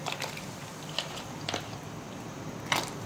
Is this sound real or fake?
real